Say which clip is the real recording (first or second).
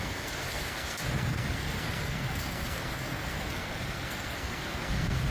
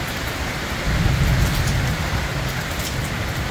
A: second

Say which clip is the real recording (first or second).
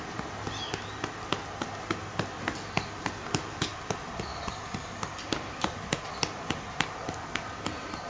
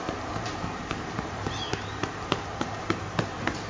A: first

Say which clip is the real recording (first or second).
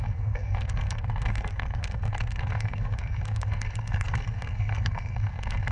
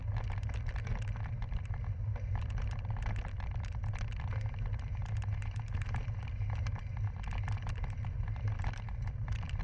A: second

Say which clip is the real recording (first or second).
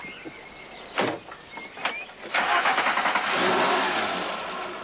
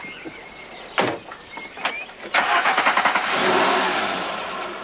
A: first